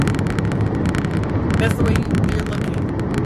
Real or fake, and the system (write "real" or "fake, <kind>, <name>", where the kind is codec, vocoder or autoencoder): real